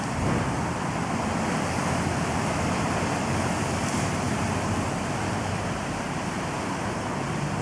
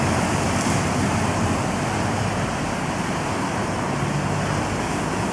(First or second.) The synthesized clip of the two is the first